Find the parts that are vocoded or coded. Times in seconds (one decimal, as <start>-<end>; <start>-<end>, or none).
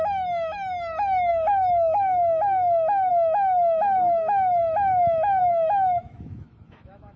0.0-4.6; 5.4-7.2